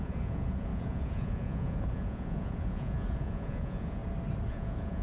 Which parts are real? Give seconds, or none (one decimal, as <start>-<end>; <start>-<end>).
4.0-4.5